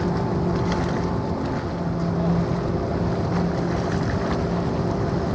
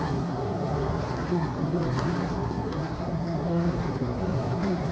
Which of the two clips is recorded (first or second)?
first